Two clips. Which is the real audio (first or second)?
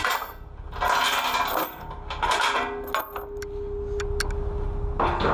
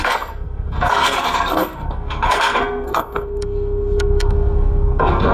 first